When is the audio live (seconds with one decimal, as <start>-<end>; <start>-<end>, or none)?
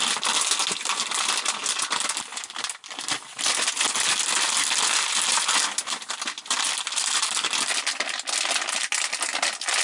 0.0-9.8